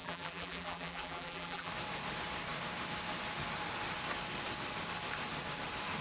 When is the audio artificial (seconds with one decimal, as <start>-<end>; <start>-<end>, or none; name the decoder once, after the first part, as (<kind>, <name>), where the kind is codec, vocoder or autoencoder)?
0.0-1.7 (vocoder, BigVGAN v2)